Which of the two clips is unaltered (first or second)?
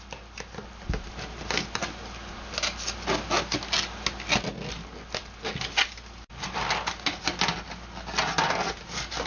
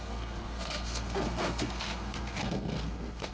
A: first